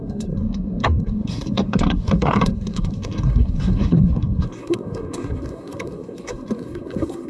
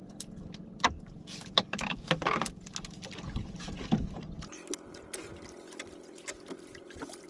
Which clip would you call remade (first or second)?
first